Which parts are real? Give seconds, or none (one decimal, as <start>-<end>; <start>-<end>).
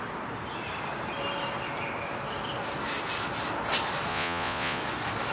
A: 0.0-4.1; 4.8-5.3